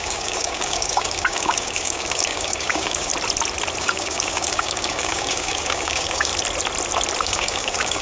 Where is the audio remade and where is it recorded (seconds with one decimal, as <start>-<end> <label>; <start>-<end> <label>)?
0.0-3.1 remade; 3.1-3.8 recorded; 3.8-6.3 remade; 6.3-7.2 recorded; 7.2-8.0 remade